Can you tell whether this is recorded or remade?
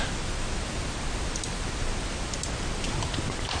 recorded